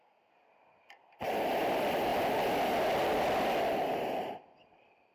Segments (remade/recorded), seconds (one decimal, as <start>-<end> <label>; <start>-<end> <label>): 0.0-5.1 recorded